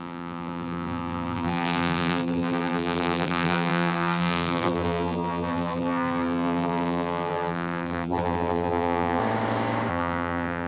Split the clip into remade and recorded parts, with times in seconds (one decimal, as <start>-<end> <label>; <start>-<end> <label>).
0.0-9.2 remade; 9.2-9.9 recorded; 9.9-10.7 remade